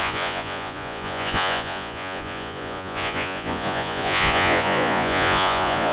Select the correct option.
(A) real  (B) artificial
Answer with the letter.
B